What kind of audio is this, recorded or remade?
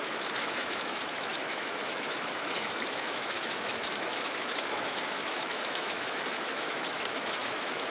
remade